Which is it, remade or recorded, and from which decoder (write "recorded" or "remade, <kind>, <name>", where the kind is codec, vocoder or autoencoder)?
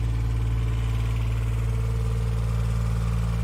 recorded